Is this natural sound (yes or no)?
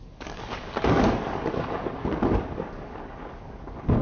no